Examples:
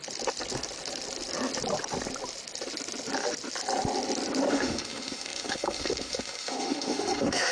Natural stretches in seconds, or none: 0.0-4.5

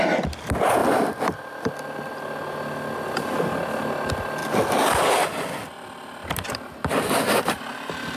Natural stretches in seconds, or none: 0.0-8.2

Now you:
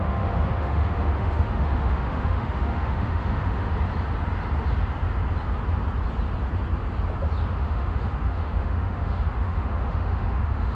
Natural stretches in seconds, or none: 3.7-7.4

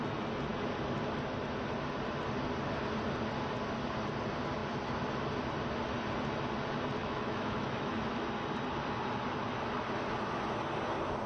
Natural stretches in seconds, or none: 0.0-7.0; 8.2-11.3

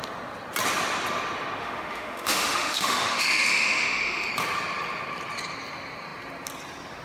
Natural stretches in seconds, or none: 0.0-1.6; 4.3-7.0